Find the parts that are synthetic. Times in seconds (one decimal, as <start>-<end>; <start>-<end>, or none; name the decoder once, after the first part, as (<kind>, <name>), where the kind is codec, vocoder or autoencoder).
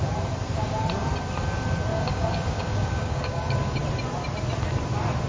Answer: 1.9-3.8 (codec, DAC)